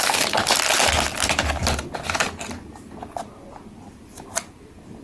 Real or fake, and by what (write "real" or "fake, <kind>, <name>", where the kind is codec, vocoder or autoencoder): real